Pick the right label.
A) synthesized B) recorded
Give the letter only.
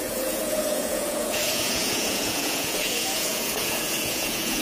A